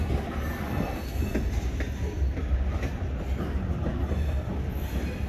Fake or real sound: real